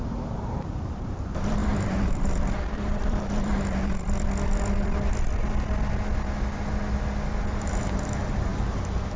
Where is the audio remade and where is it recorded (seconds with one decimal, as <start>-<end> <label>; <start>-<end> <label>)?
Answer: 0.0-3.5 remade; 3.5-7.5 recorded; 7.5-9.2 remade